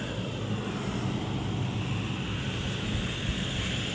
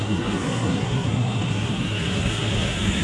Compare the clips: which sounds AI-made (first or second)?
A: second